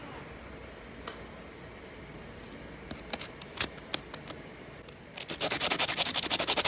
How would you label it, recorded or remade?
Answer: recorded